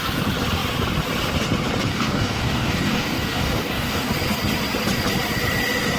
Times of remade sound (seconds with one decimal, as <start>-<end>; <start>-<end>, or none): 1.9-4.1